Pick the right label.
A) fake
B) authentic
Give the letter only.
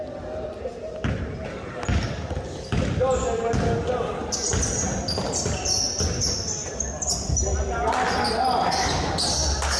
B